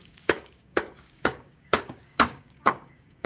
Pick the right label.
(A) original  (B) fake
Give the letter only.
B